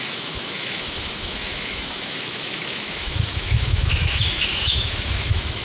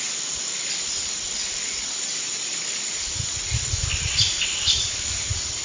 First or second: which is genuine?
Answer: second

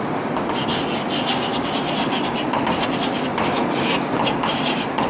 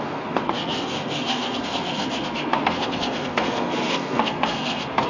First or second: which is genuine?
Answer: first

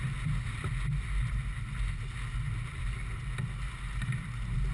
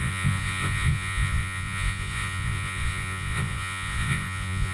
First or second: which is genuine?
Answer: first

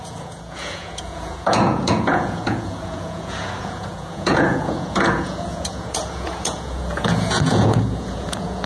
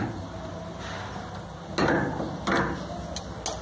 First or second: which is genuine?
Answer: second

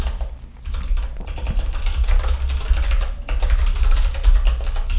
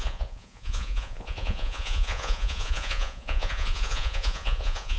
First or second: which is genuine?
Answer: first